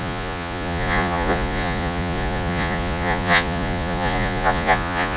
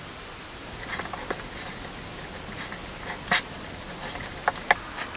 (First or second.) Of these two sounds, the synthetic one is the first